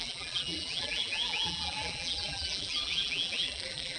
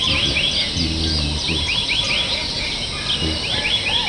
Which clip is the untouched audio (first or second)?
second